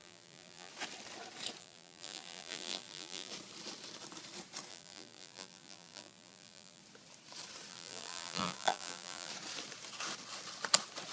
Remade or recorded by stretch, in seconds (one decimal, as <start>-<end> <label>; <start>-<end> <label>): 0.0-0.7 remade; 0.7-1.6 recorded; 1.6-3.3 remade; 3.3-4.7 recorded; 4.7-6.8 remade; 6.8-7.7 recorded; 7.7-9.3 remade; 9.3-11.1 recorded